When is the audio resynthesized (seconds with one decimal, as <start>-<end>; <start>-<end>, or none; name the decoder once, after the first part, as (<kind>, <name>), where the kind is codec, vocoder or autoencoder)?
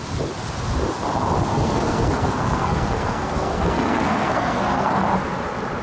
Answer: 1.5-5.0 (codec, SNAC)